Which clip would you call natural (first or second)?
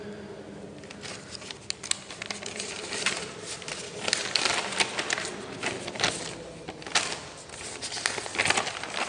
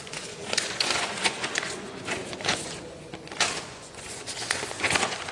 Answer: first